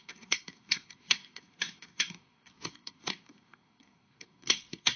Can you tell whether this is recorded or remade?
remade